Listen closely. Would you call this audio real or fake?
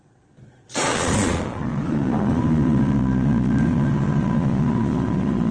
fake